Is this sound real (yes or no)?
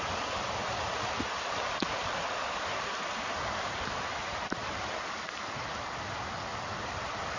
yes